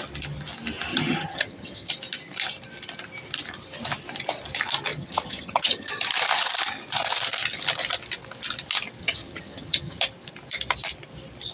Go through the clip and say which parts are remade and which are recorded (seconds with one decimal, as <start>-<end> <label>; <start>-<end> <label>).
0.0-0.9 recorded; 0.9-1.9 remade; 1.9-4.9 recorded; 4.9-5.9 remade; 5.9-9.0 recorded; 9.0-10.0 remade; 10.0-11.5 recorded